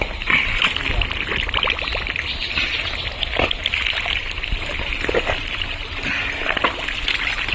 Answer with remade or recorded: recorded